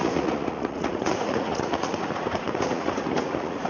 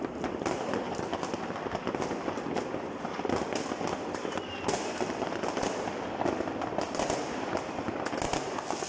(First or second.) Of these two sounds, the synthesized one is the first